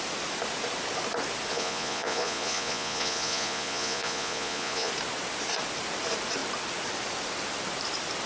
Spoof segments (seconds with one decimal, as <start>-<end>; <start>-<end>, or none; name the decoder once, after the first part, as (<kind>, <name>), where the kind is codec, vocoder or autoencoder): 1.5-4.9 (vocoder, Vocos)